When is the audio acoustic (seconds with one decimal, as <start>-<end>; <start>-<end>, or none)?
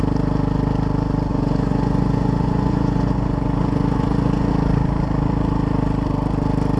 0.0-1.3; 4.5-6.8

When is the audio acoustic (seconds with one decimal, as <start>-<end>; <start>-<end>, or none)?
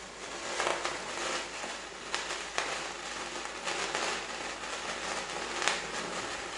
0.0-6.6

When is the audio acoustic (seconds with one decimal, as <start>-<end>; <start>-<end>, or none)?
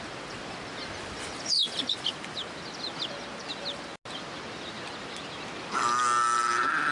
0.0-6.9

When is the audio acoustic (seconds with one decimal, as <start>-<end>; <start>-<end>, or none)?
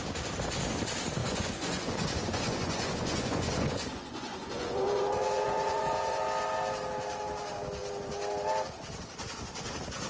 0.0-1.2; 6.2-10.1